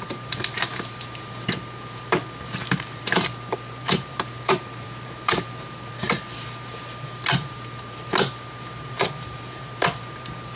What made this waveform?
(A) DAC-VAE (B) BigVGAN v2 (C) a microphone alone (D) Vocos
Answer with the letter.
B